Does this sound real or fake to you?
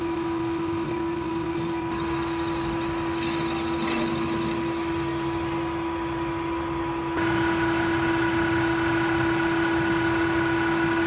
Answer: real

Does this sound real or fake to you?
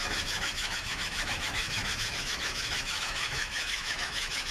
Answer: fake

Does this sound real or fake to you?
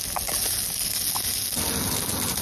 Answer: real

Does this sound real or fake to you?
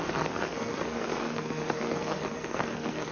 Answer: fake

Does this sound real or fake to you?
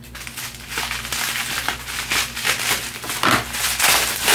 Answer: real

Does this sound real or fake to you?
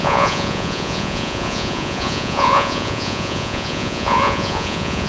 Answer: fake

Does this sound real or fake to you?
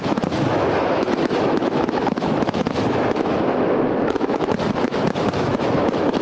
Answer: fake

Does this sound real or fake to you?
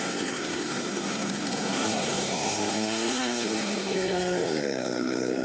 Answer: fake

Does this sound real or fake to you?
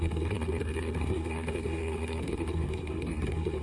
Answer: fake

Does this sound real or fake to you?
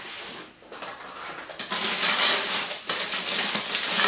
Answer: real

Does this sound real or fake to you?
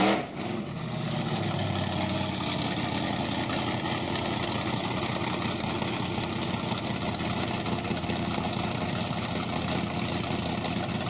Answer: real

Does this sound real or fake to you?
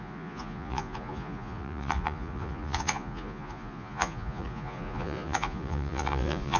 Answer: fake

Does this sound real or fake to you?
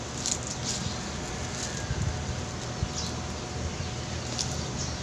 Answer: real